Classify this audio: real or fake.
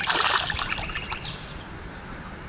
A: real